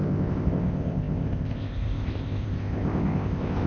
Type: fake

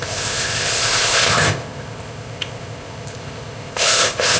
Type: fake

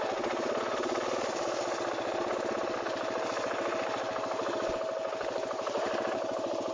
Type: real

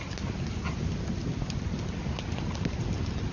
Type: real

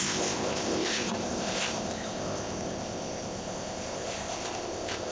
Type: fake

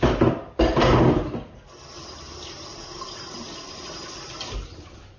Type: real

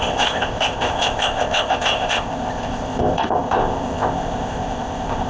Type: fake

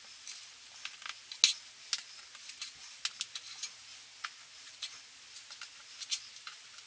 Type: real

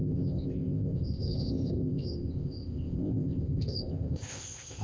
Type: fake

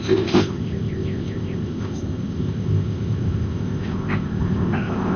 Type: fake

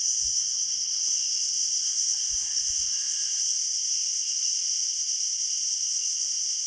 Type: fake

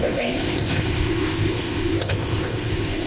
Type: fake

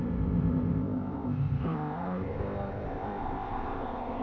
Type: fake